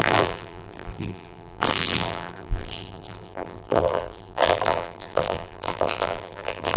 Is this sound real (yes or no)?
no